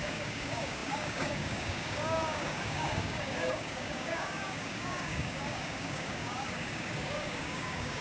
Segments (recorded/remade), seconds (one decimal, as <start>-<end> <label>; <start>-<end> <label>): 0.0-8.0 remade